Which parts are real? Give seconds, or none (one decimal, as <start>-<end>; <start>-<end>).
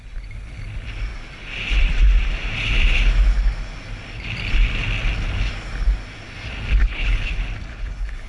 0.0-6.8; 7.3-7.7